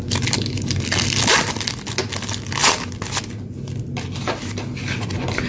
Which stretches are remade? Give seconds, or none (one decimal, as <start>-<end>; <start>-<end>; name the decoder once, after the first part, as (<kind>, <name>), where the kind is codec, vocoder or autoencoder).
none

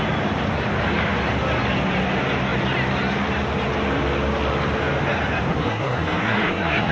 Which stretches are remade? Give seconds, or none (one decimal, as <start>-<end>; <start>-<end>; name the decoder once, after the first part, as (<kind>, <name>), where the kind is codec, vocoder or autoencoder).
5.5-6.9 (codec, SNAC)